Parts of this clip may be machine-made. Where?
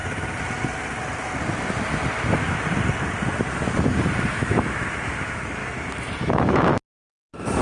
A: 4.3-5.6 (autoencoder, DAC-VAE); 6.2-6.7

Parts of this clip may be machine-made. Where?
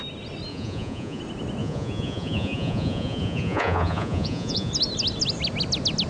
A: 0.5-1.2 (vocoder, Vocos); 1.6-4.7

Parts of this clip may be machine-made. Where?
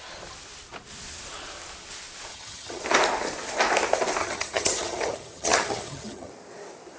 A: 2.3-2.8 (vocoder, HiFi-GAN); 4.2-6.3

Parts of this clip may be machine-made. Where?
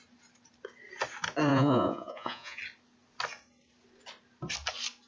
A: 1.5-2.6 (vocoder, Vocos)